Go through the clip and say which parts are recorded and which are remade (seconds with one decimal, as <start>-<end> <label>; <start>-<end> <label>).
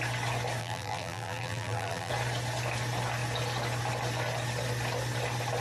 0.0-0.6 recorded; 0.6-2.1 remade; 2.1-5.6 recorded